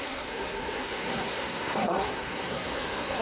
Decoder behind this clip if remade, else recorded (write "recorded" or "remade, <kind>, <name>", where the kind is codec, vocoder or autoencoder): remade, codec, SNAC